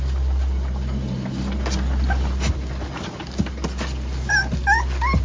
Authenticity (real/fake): real